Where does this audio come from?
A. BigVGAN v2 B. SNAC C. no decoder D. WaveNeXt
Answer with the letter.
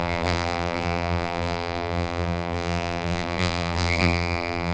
A